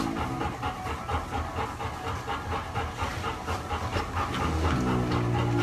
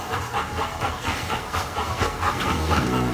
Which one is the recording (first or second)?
first